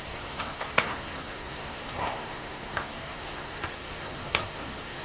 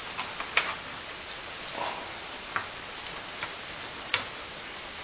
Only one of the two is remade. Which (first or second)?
first